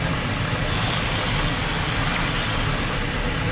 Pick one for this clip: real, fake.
real